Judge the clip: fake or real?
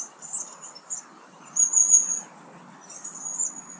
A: real